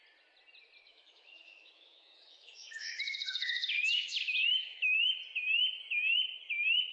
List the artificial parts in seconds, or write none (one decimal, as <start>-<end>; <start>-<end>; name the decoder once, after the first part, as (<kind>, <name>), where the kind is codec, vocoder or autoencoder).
0.9-5.0 (autoencoder, DAC-VAE)